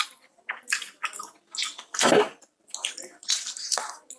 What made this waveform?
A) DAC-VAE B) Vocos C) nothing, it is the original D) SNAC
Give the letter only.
C